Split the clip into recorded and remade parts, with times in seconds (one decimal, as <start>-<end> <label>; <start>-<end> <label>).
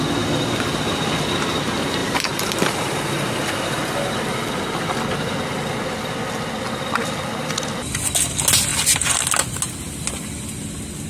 0.0-2.0 recorded; 2.0-3.0 remade; 3.0-11.1 recorded